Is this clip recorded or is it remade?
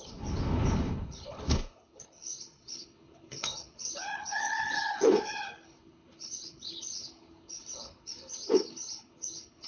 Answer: remade